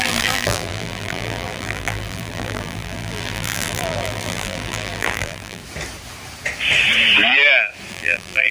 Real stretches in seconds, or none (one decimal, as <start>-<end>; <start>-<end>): 5.6-7.9